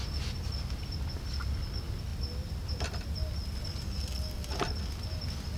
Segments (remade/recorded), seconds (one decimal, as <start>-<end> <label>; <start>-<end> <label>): 0.0-5.6 recorded